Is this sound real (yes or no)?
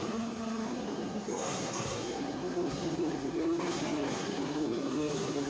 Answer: no